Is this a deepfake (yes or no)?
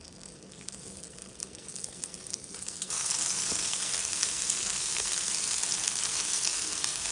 yes